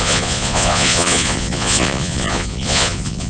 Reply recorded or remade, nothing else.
remade